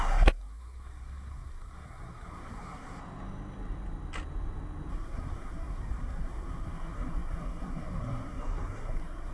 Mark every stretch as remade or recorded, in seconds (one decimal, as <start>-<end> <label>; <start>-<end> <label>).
0.0-3.0 remade; 3.0-4.9 recorded; 4.9-9.3 remade